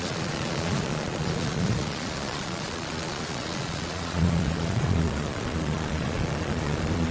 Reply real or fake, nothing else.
fake